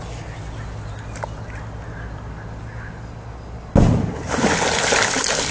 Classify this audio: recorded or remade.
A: recorded